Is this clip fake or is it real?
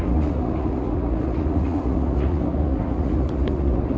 fake